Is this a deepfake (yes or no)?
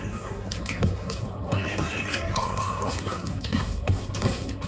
yes